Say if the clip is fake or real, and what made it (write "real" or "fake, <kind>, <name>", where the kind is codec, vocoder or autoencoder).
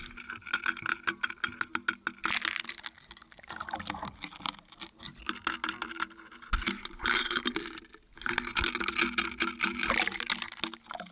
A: real